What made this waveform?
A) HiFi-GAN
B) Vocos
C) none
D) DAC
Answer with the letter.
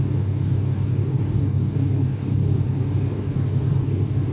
D